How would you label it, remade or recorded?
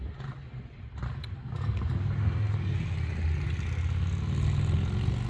recorded